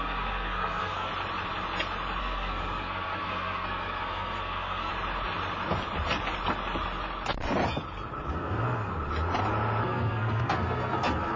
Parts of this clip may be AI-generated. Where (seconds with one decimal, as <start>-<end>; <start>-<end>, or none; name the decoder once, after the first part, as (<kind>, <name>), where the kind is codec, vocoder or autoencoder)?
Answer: 0.0-1.1 (codec, SNAC); 2.2-4.9; 8.3-8.9; 9.8-11.4